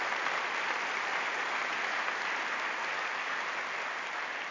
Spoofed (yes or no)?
no